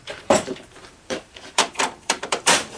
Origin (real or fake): fake